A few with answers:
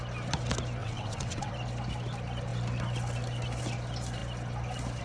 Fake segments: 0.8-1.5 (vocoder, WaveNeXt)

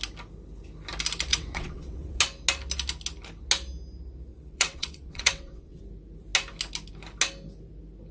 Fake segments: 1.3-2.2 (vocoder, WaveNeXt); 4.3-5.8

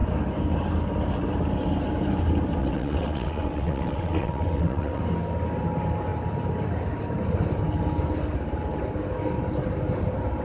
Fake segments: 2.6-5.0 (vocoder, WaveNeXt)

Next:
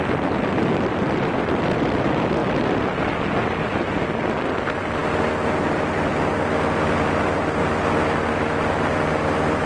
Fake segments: none